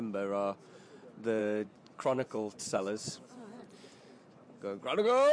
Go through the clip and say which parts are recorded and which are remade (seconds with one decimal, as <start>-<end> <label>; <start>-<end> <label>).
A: 0.0-1.4 recorded; 1.4-4.6 remade; 4.6-5.3 recorded